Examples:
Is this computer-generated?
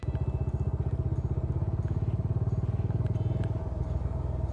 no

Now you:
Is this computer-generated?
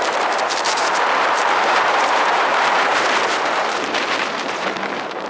yes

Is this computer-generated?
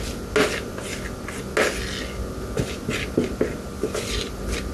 no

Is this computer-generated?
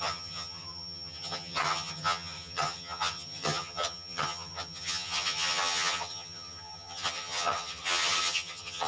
yes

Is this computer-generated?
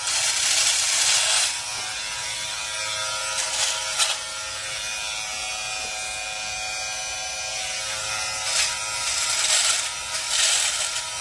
no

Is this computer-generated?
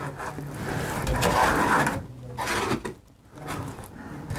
no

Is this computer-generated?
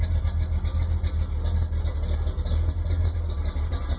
no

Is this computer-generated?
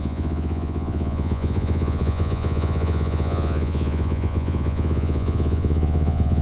yes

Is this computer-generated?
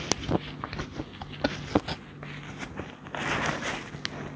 no